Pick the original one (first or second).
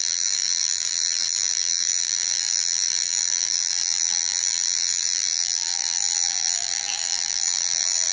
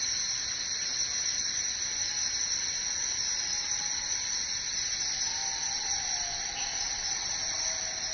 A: second